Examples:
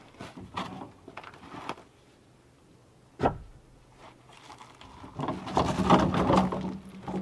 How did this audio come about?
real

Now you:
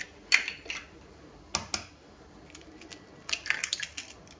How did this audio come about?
real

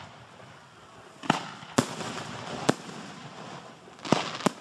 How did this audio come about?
real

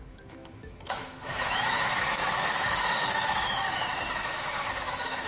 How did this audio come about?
fake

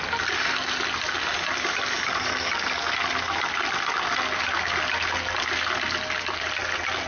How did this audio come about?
real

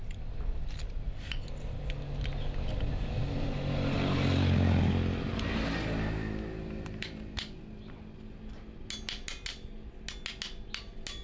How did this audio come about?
real